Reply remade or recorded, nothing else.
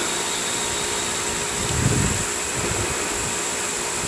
recorded